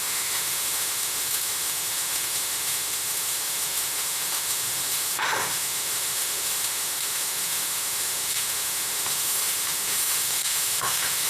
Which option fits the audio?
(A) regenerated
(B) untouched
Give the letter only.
A